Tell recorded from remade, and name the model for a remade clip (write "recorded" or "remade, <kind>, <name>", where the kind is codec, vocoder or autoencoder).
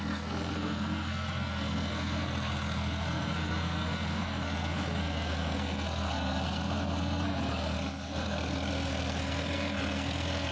remade, codec, SNAC